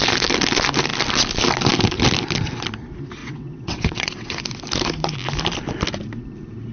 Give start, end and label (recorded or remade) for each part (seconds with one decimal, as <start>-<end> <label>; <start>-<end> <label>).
0.0-3.2 recorded; 3.2-4.4 remade; 4.4-6.7 recorded